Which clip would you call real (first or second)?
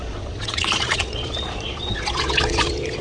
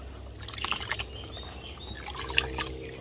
second